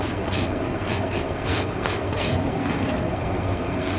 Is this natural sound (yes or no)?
no